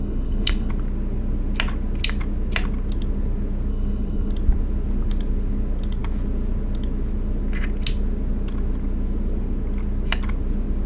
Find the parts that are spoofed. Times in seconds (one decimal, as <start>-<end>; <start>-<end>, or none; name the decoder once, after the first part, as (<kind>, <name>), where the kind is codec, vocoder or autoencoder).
0.0-0.7 (codec, HILCodec); 3.7-4.3